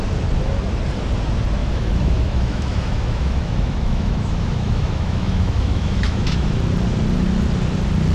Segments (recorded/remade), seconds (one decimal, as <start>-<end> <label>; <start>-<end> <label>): 0.0-1.6 recorded; 1.6-6.5 remade; 6.5-8.1 recorded

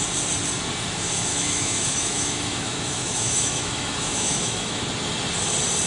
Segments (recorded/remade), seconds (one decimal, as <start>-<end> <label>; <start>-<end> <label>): 0.0-1.3 recorded; 1.3-4.8 remade; 4.8-5.9 recorded

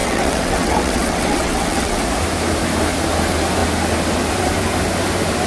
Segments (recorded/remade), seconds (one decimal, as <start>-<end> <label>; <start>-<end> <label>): 0.0-2.0 remade; 2.0-5.5 recorded